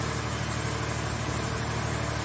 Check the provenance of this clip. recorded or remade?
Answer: recorded